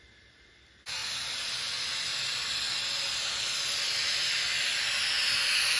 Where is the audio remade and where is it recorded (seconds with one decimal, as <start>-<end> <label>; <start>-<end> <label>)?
0.0-5.8 recorded